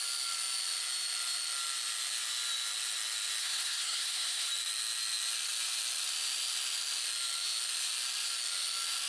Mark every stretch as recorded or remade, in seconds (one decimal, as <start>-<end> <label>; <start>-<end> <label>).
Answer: 0.0-3.4 recorded; 3.4-4.5 remade; 4.5-9.1 recorded